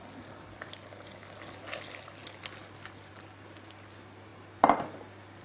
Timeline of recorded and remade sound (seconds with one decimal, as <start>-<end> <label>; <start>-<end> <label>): 0.0-5.4 recorded